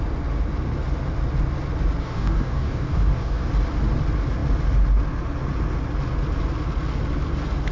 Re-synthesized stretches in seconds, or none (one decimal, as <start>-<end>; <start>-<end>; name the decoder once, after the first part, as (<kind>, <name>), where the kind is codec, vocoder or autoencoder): 2.0-3.5 (codec, DAC)

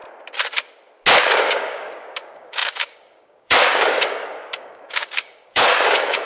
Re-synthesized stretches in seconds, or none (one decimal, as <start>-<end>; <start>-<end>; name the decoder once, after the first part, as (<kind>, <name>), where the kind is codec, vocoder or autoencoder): 1.2-6.3 (codec, DAC)

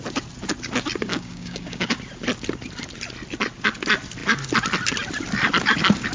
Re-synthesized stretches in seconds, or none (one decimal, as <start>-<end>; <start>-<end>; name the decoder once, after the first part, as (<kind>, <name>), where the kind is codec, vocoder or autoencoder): 1.1-2.0 (codec, DAC)

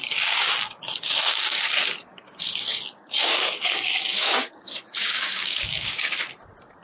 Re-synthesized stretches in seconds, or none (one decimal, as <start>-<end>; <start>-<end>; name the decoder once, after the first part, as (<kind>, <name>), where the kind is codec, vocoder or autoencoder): 0.0-1.6 (codec, DAC); 2.1-6.2

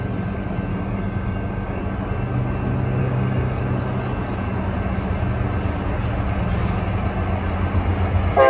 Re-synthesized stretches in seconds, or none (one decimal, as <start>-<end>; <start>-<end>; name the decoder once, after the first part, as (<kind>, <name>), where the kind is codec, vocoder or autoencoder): 0.7-1.8 (codec, DAC); 3.0-3.6